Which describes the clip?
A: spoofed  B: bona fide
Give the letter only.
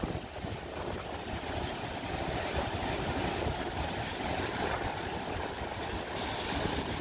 B